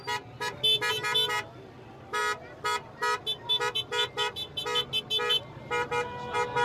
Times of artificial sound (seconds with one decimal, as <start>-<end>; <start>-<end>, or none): none